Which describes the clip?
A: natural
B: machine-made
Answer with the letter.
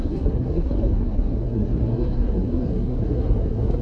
B